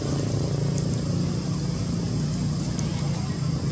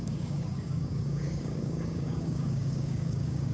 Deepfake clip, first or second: second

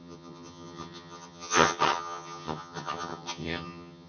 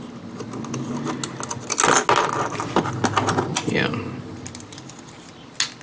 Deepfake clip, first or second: first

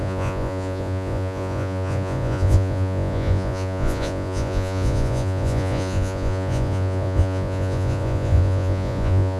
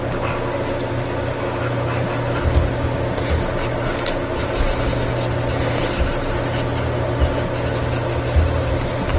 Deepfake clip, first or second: first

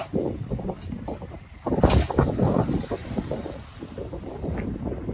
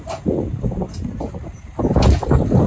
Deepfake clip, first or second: first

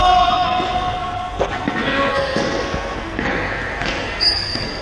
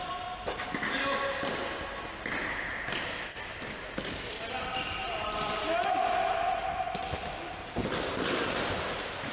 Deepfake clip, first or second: first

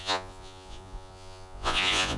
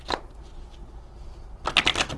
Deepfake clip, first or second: first